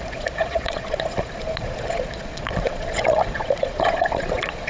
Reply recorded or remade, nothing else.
remade